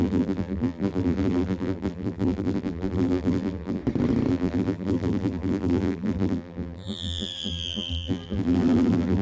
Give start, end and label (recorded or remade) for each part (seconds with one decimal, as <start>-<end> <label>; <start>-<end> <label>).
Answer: 0.0-3.8 remade; 3.8-4.3 recorded; 4.3-9.2 remade